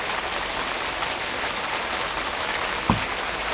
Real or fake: real